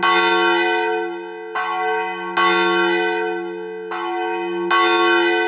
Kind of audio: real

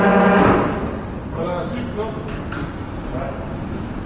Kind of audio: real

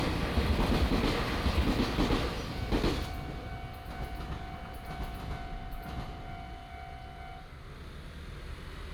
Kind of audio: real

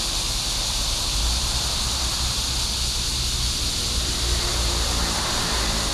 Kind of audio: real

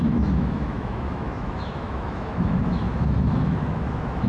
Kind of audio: fake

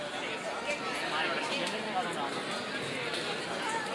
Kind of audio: real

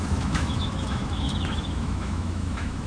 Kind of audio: fake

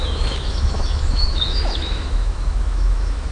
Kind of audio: fake